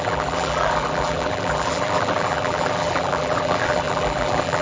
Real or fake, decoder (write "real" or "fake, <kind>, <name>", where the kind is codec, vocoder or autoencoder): fake, vocoder, BigVGAN v2